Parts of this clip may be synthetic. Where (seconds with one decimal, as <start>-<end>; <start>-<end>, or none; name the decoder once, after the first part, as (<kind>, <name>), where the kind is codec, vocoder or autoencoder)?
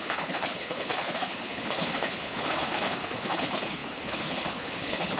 0.0-5.2 (codec, HILCodec)